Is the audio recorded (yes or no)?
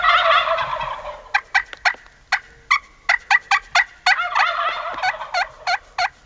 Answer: yes